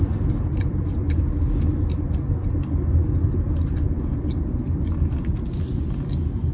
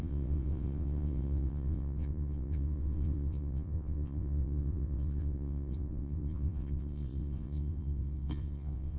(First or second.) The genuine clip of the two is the first